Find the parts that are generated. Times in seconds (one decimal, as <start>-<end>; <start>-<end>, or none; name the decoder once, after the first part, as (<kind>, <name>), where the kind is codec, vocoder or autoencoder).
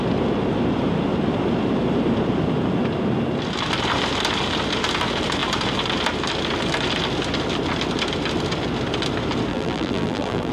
9.5-10.5 (vocoder, BigVGAN v2)